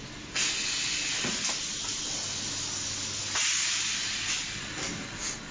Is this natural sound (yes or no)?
yes